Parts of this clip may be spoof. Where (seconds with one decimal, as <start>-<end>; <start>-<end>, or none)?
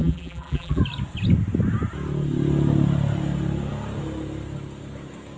0.0-0.8